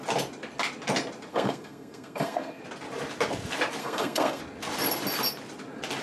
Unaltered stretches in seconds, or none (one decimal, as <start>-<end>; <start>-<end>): 0.0-1.3; 2.6-3.8; 4.4-6.0